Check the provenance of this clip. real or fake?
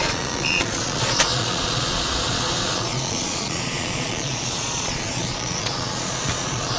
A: fake